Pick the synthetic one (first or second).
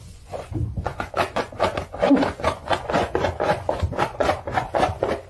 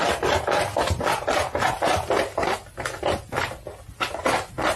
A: first